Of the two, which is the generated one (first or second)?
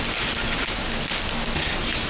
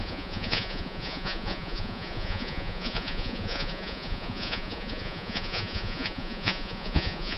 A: second